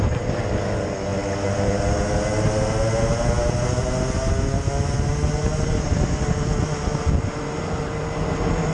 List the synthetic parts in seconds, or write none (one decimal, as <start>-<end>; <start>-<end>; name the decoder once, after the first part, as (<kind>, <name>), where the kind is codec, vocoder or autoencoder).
none